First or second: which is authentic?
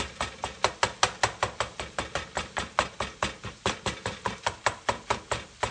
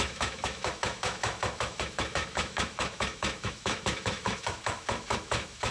first